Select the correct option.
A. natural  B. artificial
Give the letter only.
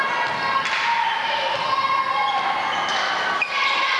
A